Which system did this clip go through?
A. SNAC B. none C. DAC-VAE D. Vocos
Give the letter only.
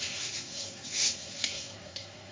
A